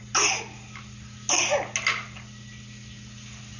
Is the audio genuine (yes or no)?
yes